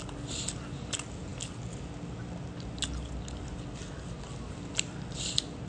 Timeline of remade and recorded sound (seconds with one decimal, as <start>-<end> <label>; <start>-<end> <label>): 0.0-5.7 recorded